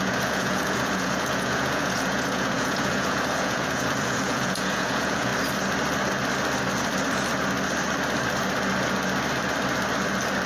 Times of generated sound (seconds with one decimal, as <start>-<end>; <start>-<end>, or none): 0.0-5.3

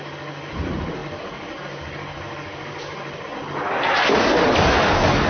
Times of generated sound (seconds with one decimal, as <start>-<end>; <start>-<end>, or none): none

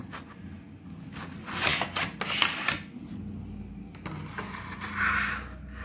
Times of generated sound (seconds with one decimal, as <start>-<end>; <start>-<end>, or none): none

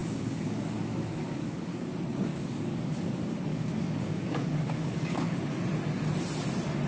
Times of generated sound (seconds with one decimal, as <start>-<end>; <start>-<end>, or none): 0.0-1.9; 2.3-3.1; 3.5-5.4